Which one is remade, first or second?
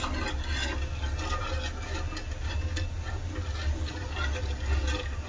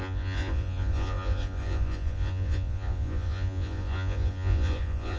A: second